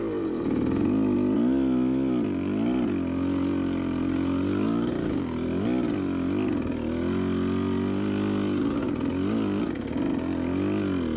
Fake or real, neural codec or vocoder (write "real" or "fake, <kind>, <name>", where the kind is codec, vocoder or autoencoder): real